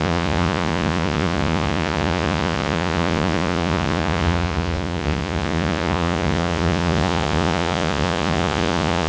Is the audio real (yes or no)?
no